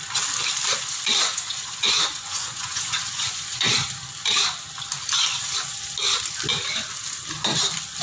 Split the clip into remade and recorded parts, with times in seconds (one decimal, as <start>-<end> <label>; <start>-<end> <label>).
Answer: 0.0-1.3 recorded; 1.3-3.7 remade; 3.7-8.0 recorded